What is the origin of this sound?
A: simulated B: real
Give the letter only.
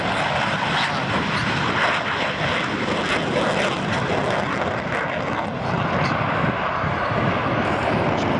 B